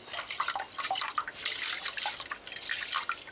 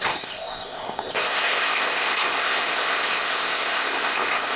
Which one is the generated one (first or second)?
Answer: second